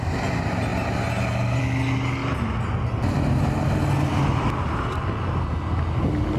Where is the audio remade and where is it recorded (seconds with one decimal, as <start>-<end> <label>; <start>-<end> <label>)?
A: 0.0-6.4 recorded

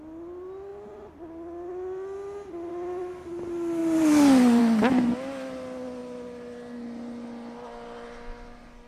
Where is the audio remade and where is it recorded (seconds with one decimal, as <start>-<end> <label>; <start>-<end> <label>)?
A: 0.0-3.8 recorded; 3.8-4.6 remade; 4.6-8.9 recorded

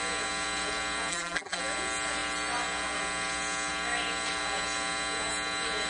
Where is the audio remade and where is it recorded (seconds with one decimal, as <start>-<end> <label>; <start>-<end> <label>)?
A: 0.0-1.1 recorded; 1.1-1.6 remade; 1.6-5.9 recorded

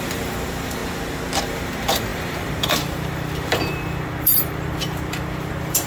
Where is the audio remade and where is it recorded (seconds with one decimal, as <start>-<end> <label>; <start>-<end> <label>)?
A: 0.0-0.8 remade; 0.8-1.4 recorded; 1.4-5.9 remade

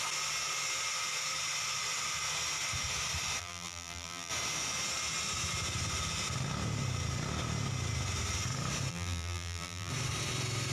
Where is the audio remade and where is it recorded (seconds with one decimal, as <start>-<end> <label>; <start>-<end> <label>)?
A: 0.0-3.4 recorded; 3.4-4.3 remade; 4.3-8.9 recorded; 8.9-9.9 remade; 9.9-10.7 recorded

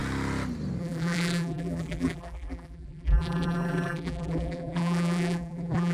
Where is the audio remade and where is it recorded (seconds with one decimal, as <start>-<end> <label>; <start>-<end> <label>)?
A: 0.0-0.8 recorded; 0.8-5.9 remade

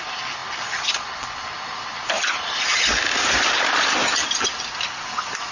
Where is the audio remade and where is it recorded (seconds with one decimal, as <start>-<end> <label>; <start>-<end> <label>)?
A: 0.0-0.4 recorded; 0.4-3.7 remade; 3.7-5.5 recorded

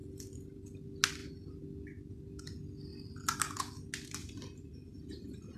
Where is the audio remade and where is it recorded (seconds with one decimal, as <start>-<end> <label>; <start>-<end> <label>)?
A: 0.0-0.6 remade; 0.6-4.2 recorded; 4.2-5.6 remade